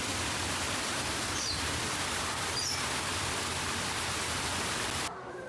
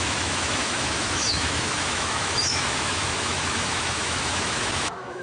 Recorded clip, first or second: first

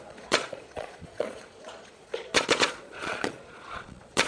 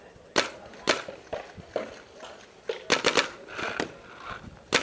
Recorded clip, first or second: second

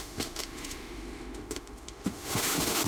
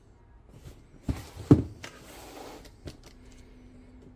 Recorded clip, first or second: second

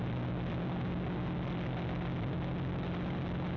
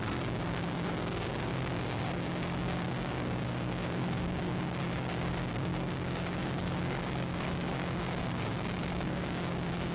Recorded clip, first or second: first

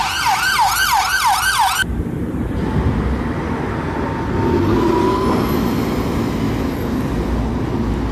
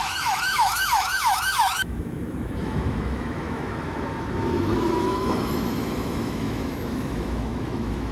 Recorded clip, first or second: first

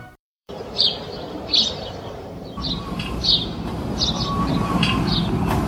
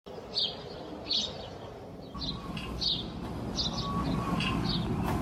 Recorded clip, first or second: second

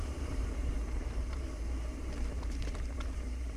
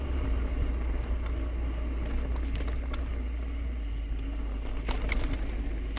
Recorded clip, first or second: second